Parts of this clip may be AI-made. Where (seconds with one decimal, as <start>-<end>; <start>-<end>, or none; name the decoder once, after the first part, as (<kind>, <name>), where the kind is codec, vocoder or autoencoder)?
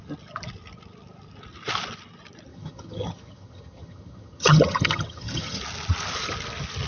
2.5-5.6 (vocoder, HiFi-GAN)